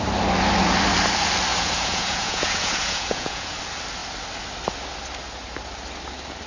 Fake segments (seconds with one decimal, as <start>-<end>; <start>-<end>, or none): 1.5-3.6